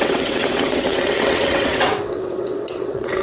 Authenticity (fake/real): fake